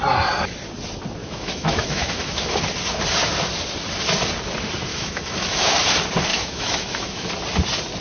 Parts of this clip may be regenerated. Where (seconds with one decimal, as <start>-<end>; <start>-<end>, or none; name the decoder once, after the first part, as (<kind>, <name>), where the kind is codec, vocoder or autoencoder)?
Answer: 1.2-2.6 (autoencoder, DAC-VAE); 4.9-5.7; 6.3-7.3